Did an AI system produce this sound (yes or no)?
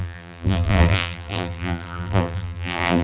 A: yes